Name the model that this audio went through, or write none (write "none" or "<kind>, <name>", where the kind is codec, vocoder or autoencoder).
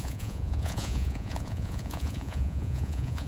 vocoder, Vocos